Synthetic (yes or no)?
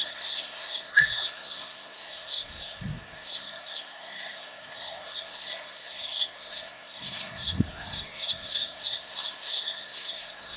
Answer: yes